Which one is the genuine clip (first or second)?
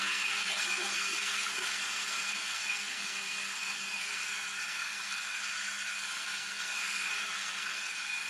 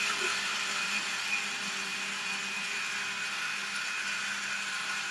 second